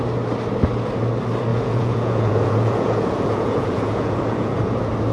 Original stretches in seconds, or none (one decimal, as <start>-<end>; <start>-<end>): 0.0-1.5; 4.6-5.1

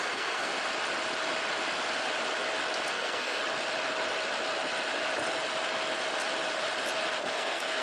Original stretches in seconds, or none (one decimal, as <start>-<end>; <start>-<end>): 0.5-2.9; 3.4-7.2

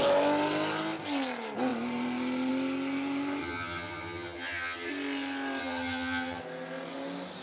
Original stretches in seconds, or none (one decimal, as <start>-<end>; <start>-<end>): 0.0-3.4; 4.9-5.6; 6.4-7.4

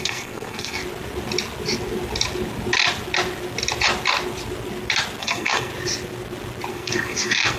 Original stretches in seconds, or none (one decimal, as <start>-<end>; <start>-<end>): 0.8-5.2; 5.7-6.7

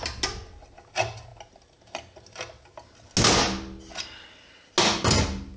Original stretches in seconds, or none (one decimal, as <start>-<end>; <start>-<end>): 0.0-5.6

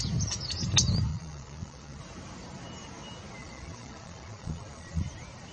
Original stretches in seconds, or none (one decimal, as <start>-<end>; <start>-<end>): 0.0-1.1; 2.0-3.4; 5.0-5.5